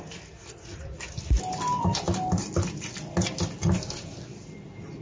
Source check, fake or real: real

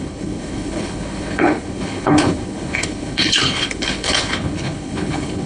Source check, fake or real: fake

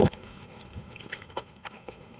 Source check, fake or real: fake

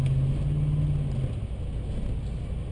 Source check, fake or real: real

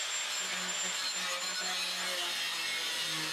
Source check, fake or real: real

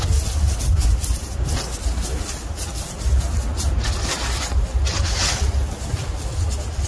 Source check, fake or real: real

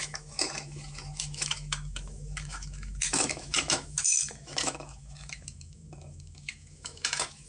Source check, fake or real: fake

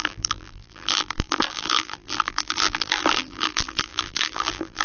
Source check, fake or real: fake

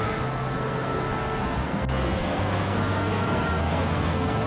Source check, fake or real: fake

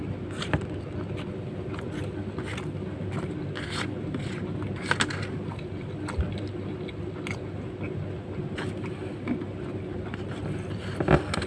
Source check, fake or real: real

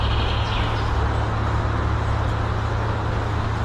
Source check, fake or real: real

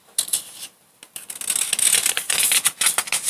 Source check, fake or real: real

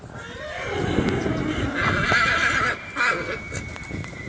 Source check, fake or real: real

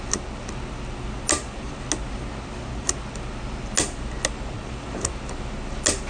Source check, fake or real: real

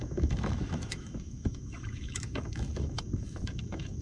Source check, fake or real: fake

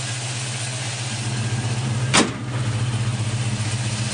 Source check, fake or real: real